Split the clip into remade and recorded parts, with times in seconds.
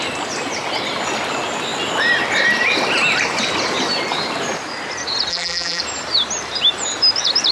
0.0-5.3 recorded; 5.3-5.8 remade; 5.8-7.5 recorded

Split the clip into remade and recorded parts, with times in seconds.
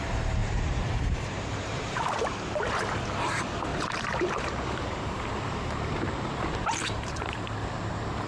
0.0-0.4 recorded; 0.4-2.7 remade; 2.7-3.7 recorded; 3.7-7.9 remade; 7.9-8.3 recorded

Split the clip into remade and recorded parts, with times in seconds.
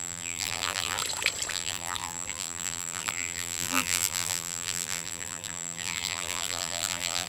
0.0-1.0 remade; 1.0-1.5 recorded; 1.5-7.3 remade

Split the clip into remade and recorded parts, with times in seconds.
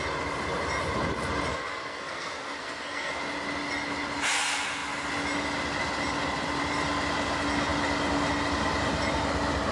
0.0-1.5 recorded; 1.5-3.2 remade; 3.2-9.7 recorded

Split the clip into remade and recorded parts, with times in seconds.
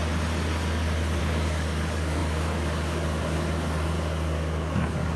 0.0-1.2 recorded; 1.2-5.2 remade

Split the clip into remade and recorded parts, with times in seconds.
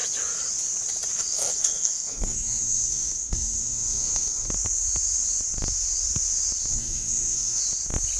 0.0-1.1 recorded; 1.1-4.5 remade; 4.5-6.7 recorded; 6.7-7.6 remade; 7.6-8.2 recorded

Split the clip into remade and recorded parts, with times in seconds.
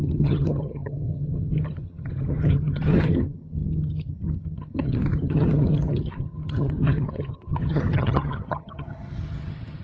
0.0-9.8 remade